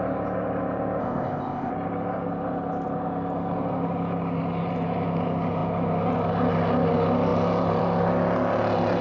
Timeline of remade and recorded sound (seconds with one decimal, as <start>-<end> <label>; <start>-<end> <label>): 0.0-1.0 recorded; 1.0-1.7 remade; 1.7-9.0 recorded